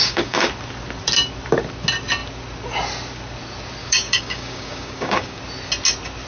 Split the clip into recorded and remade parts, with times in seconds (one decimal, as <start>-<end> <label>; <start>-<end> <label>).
0.0-0.5 remade; 0.5-3.8 recorded; 3.8-5.4 remade; 5.4-6.3 recorded